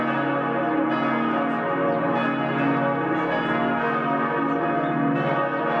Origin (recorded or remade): recorded